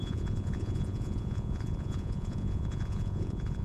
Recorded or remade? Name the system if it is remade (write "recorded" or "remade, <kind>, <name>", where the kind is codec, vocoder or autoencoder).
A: remade, vocoder, Vocos